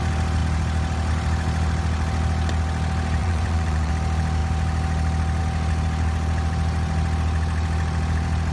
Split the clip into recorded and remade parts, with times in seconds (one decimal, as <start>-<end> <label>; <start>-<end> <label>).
0.0-3.2 recorded; 3.2-3.9 remade; 3.9-8.5 recorded